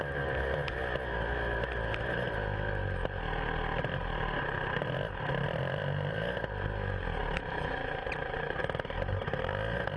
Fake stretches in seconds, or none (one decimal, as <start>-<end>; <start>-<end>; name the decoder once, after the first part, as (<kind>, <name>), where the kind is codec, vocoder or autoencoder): 7.2-9.5 (vocoder, BigVGAN v2)